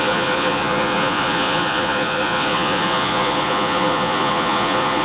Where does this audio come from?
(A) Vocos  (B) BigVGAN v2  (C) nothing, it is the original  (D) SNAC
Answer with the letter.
A